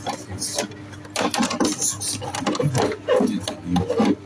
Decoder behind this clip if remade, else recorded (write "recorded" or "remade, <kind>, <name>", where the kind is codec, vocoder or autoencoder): recorded